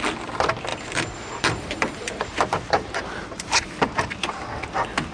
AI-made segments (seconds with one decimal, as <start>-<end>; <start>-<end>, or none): 0.7-3.8